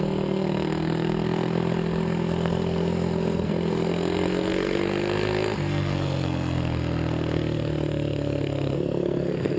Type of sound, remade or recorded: remade